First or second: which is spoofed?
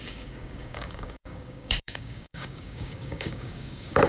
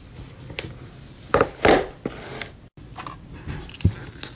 first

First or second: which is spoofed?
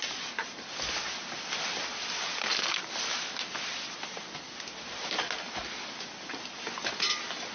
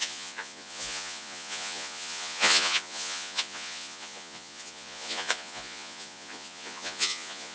second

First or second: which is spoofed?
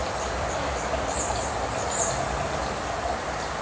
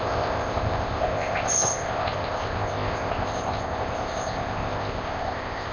second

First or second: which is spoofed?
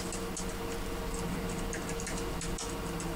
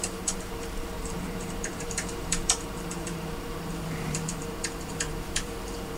second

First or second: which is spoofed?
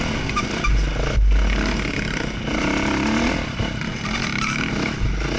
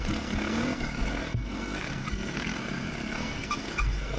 second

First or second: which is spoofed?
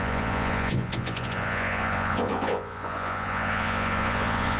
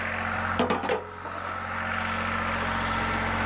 first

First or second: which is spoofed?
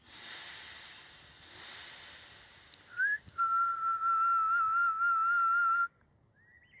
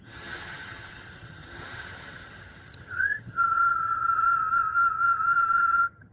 second